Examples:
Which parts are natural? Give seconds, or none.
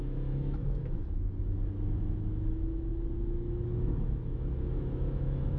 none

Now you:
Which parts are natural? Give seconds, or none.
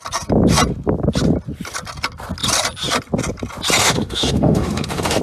0.0-3.8